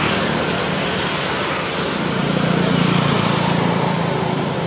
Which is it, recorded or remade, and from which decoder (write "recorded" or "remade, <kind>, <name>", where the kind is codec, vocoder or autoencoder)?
remade, vocoder, BigVGAN v2